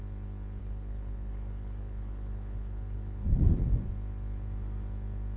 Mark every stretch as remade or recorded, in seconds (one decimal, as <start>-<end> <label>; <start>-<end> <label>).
0.0-0.6 recorded; 0.6-3.6 remade; 3.6-5.4 recorded